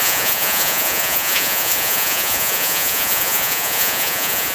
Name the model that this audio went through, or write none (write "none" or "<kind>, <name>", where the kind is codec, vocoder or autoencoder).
vocoder, Vocos